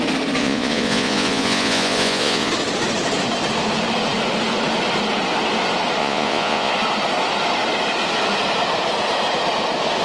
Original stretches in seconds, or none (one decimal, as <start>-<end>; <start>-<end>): 0.0-0.4; 2.5-6.0; 6.7-10.0